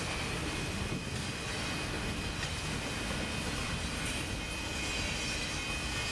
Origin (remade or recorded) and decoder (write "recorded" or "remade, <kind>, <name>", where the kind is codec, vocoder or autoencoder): recorded